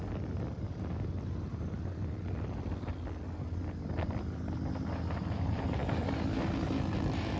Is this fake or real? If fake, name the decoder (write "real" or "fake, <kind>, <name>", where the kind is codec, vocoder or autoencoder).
real